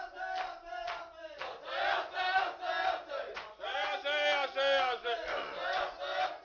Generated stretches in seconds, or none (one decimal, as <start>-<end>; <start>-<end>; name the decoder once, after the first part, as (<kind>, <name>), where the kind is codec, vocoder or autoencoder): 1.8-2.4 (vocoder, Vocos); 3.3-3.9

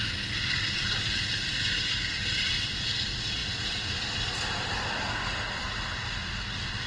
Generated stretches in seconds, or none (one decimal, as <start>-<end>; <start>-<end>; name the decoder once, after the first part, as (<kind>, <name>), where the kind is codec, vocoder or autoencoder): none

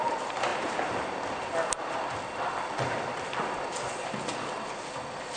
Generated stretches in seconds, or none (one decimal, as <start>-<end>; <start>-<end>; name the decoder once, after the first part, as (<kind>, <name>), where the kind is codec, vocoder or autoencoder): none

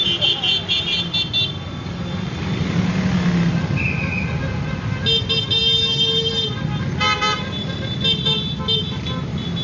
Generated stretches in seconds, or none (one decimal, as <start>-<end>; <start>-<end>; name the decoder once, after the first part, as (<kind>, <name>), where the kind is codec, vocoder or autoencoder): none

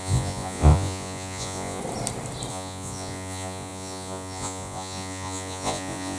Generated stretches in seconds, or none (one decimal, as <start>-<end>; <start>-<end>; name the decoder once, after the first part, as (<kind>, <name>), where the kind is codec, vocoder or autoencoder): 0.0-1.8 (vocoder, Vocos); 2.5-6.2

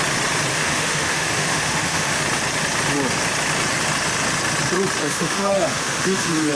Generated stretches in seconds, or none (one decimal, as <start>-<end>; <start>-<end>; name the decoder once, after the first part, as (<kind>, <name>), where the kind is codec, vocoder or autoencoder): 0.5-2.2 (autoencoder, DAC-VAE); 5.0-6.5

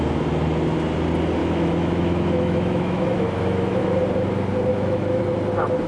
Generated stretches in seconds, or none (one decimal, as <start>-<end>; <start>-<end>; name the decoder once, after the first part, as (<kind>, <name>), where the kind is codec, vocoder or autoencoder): 1.4-4.0 (autoencoder, DAC-VAE); 4.7-5.2